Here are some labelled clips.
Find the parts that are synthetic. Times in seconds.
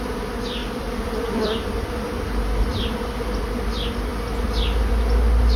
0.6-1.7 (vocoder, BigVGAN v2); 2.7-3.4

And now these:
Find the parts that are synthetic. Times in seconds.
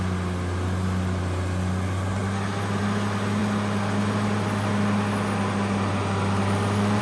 none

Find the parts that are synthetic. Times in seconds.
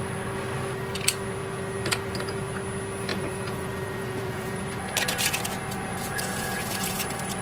3.1-4.6 (vocoder, Vocos); 5.9-7.4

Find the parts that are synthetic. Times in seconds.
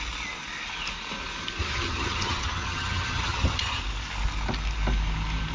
1.6-3.8 (vocoder, HiFi-GAN)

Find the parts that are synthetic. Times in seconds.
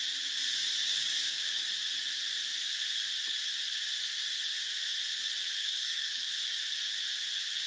0.8-1.6 (codec, DAC); 5.6-6.3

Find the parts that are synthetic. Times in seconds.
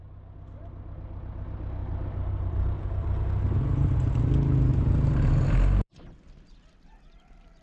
1.8-3.2 (vocoder, BigVGAN v2); 4.7-6.3